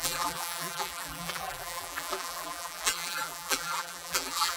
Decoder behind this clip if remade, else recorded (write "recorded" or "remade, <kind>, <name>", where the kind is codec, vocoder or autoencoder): remade, vocoder, BigVGAN v2